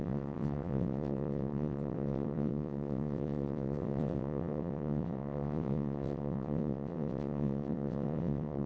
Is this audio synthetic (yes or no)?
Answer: yes